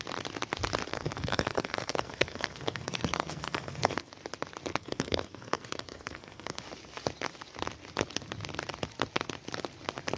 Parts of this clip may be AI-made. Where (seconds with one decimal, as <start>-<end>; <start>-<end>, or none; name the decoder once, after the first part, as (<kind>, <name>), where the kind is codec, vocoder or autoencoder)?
0.9-4.1 (codec, SNAC); 4.7-6.6